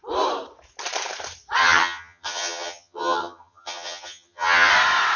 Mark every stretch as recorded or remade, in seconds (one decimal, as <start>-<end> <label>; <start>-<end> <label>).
0.0-1.6 recorded; 1.6-4.7 remade; 4.7-5.2 recorded